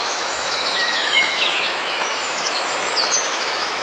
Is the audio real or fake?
fake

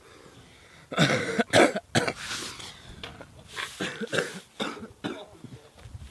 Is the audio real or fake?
real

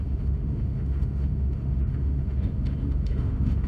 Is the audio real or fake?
fake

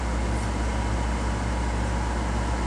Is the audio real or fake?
real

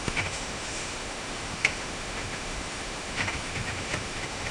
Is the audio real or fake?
fake